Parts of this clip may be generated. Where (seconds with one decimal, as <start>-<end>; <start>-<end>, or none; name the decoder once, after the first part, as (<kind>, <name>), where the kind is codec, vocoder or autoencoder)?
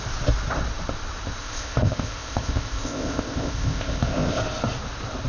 1.4-4.4 (codec, ZipCodec)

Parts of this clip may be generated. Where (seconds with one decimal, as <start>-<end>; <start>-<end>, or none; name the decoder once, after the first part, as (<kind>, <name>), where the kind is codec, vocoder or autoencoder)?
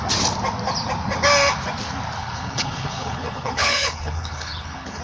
2.2-5.0 (codec, HILCodec)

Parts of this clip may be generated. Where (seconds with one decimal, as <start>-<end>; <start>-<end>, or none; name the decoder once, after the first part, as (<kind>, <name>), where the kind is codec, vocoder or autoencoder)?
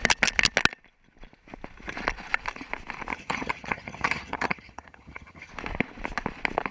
3.1-5.5 (vocoder, HiFi-GAN)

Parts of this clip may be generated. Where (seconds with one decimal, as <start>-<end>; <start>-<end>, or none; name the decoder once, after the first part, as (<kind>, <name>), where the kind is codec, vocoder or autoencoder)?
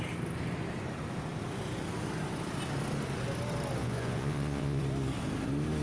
3.8-4.8 (vocoder, Vocos)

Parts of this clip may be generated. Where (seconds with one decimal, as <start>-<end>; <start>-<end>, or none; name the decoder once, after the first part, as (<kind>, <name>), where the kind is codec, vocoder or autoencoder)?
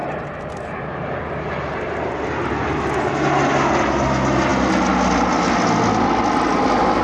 0.0-2.3 (vocoder, BigVGAN v2)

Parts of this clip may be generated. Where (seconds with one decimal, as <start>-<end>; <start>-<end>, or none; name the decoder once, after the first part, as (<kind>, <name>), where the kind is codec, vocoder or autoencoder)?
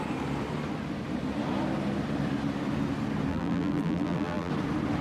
3.3-4.5 (vocoder, BigVGAN v2)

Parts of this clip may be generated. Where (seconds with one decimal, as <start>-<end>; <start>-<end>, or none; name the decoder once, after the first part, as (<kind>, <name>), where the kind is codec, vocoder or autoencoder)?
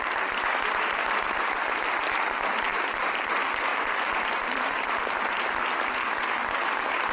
2.7-3.3 (vocoder, BigVGAN v2); 3.7-4.9